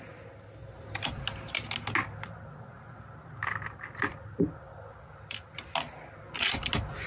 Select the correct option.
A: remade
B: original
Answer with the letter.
B